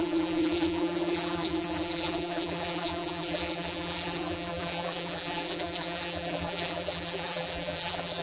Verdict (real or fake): fake